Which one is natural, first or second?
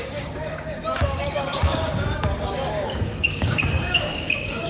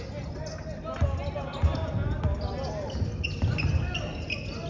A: second